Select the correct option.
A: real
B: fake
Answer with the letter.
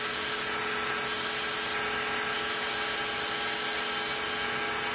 A